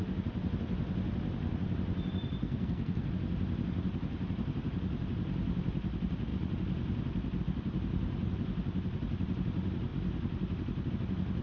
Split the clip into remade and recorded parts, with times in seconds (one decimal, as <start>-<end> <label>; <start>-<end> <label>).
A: 0.0-2.4 recorded; 2.4-3.1 remade; 3.1-11.4 recorded